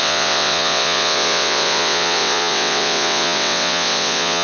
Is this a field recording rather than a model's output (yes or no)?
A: no